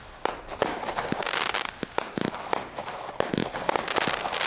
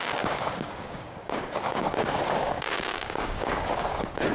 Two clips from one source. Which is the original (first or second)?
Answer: first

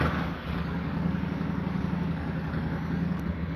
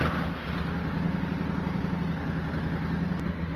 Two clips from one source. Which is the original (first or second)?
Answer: second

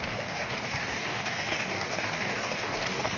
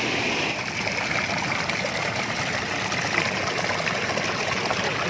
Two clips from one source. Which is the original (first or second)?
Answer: second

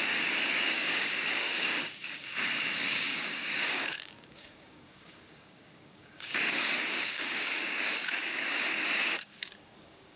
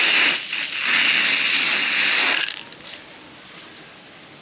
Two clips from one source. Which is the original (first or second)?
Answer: second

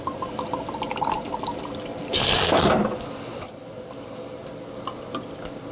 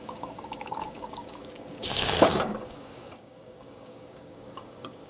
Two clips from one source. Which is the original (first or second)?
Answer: first